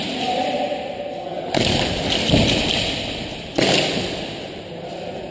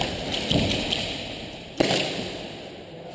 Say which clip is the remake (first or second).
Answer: first